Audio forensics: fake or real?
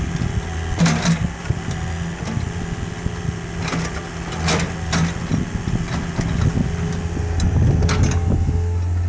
real